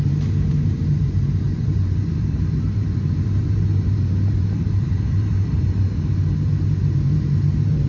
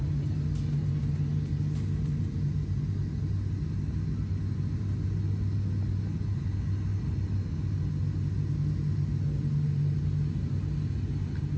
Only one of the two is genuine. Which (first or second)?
second